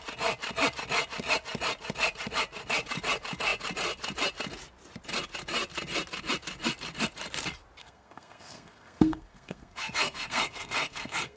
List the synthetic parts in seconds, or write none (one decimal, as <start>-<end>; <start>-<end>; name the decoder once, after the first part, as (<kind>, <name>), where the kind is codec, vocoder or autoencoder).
7.8-11.4 (codec, SNAC)